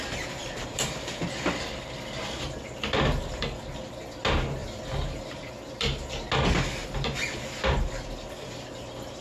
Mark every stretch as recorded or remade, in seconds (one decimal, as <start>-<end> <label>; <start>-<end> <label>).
0.0-0.4 recorded; 0.4-3.9 remade; 3.9-9.2 recorded